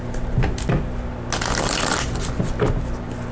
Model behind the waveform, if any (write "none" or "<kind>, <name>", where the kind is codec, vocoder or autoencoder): none